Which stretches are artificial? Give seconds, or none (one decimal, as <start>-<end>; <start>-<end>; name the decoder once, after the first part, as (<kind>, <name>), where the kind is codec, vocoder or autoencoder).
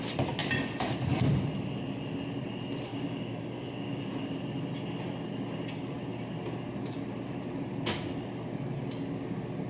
2.9-4.0 (codec, DAC)